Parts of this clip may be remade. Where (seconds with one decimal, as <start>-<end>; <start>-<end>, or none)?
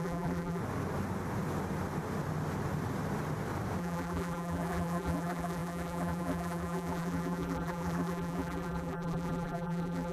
0.0-0.6; 3.8-10.1